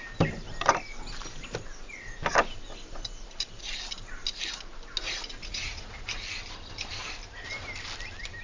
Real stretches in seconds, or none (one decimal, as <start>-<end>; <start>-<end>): 0.0-5.4; 6.0-8.4